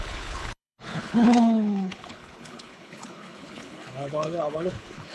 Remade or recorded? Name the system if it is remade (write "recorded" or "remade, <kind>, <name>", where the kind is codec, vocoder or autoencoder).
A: remade, codec, HILCodec